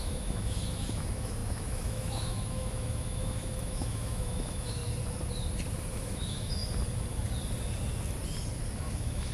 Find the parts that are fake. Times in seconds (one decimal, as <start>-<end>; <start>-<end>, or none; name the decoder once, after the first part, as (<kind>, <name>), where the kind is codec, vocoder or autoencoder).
0.0-4.8 (autoencoder, DAC-VAE); 5.9-6.6; 8.8-9.3